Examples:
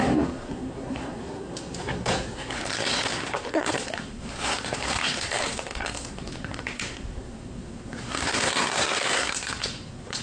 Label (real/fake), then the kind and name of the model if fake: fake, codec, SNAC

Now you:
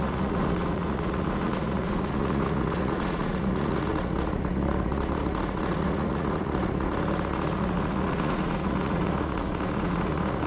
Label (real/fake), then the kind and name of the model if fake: fake, vocoder, Vocos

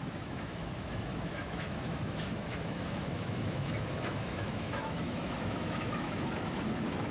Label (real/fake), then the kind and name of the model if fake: fake, autoencoder, DAC-VAE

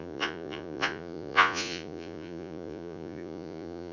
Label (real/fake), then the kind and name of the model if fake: fake, vocoder, Vocos